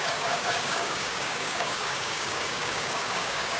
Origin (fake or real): fake